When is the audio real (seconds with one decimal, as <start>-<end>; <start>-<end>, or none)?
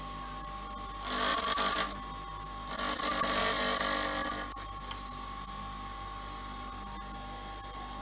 0.0-8.0